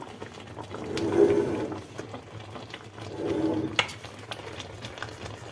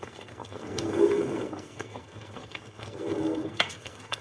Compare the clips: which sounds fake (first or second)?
second